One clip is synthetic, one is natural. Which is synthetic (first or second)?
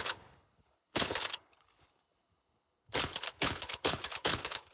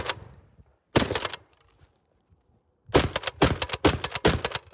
first